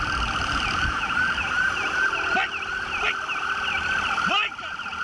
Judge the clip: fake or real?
real